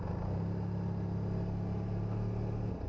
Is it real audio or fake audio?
real